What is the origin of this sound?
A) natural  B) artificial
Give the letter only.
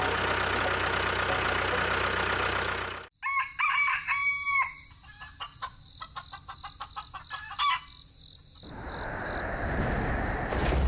A